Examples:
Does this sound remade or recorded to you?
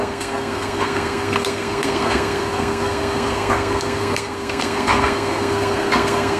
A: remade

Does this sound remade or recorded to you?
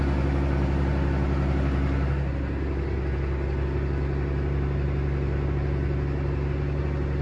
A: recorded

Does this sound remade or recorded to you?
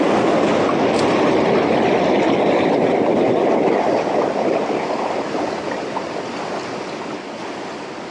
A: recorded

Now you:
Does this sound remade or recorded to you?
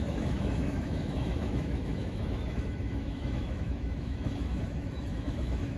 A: remade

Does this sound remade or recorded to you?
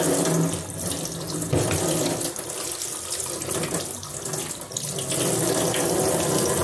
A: recorded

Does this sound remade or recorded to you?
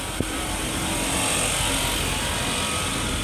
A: remade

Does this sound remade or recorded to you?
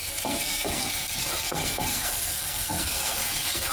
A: remade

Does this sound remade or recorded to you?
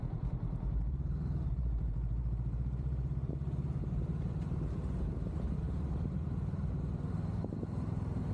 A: remade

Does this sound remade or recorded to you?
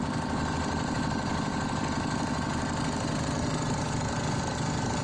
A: recorded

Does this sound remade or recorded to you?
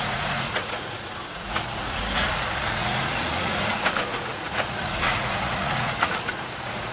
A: remade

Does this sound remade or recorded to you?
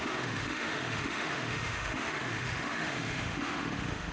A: remade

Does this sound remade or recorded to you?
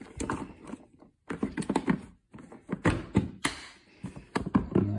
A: recorded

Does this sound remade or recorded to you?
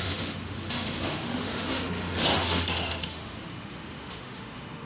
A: remade